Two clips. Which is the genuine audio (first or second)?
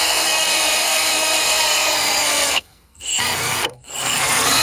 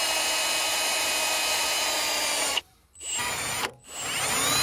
second